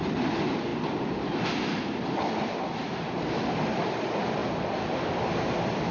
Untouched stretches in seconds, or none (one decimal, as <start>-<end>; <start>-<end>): 0.0-5.9